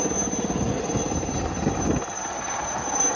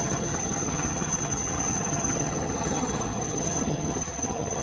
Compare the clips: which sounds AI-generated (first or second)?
second